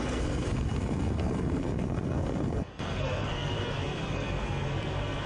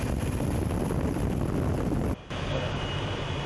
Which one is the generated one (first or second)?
first